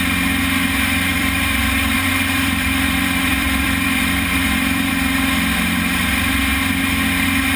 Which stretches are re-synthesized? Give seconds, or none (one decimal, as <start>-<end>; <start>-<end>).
1.1-4.9